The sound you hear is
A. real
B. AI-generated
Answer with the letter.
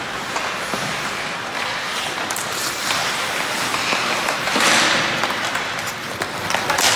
A